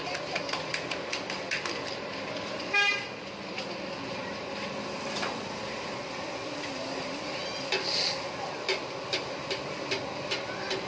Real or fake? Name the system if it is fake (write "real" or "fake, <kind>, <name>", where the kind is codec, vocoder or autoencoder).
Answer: real